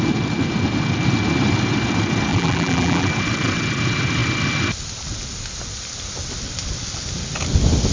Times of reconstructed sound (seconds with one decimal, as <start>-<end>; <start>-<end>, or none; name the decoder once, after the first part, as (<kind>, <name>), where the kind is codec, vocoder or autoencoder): 2.3-3.1 (vocoder, BigVGAN v2)